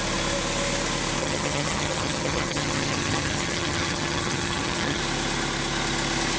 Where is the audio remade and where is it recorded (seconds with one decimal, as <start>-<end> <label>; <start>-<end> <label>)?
0.0-1.2 recorded; 1.2-5.0 remade; 5.0-6.4 recorded